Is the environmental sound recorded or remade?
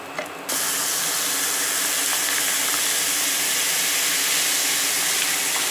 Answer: recorded